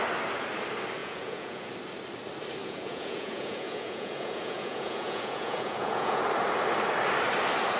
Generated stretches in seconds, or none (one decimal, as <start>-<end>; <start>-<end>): 1.0-1.7; 2.6-6.2